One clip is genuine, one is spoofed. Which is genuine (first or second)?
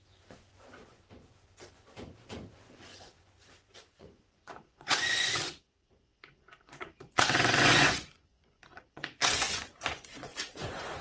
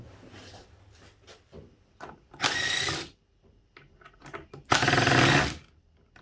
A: second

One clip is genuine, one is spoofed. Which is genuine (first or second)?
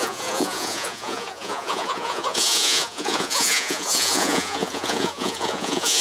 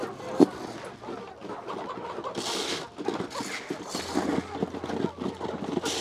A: second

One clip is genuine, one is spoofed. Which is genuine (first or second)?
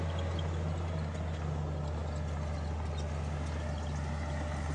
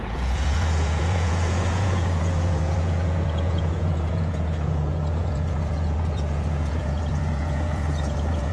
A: first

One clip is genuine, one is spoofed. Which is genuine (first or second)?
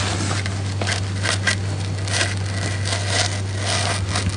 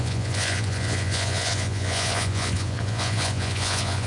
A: first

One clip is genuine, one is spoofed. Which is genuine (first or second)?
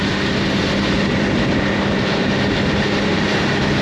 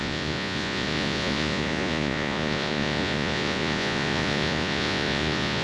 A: first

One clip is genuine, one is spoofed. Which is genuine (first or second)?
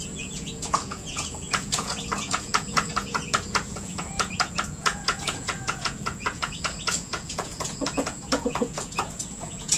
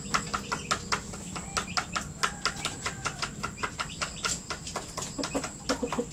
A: second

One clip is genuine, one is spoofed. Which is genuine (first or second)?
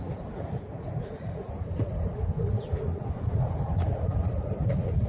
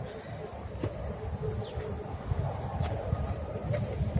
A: second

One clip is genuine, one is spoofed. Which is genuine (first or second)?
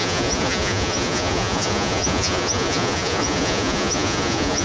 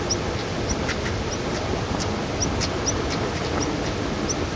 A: second